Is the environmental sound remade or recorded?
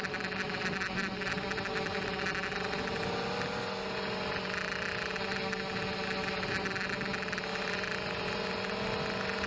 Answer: recorded